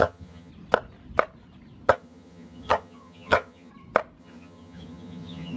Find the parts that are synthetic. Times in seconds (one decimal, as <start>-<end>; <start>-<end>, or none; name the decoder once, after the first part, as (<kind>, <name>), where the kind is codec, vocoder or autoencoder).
0.0-0.5 (vocoder, HiFi-GAN); 1.9-3.7; 4.2-5.6